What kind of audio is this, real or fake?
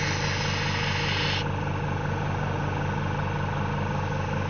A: real